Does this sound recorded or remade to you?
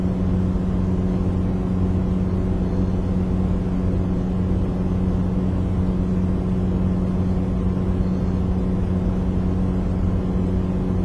recorded